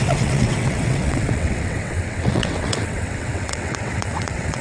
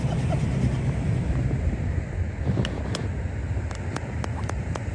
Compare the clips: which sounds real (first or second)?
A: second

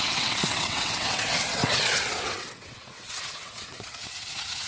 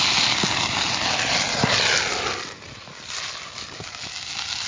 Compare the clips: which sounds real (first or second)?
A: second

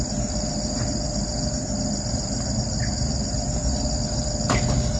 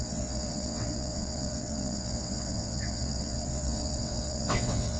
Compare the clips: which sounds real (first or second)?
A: first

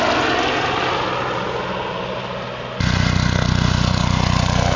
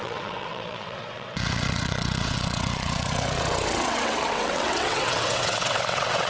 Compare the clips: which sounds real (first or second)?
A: first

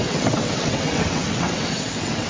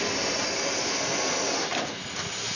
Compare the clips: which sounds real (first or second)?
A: second